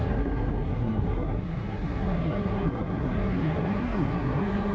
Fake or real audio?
fake